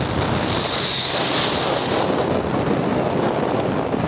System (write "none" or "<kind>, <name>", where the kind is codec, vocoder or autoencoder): none